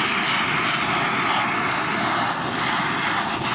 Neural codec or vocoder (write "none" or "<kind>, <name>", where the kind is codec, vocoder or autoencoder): none